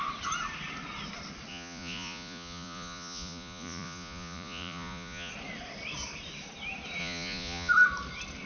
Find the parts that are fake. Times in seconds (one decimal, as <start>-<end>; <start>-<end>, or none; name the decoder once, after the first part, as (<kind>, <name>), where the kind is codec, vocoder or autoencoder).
1.5-5.3 (vocoder, Vocos); 7.0-7.7